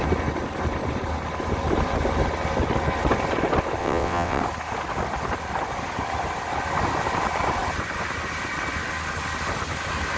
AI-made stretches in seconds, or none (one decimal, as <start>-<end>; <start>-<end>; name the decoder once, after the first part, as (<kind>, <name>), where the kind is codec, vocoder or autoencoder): 3.8-4.4 (vocoder, WaveNeXt)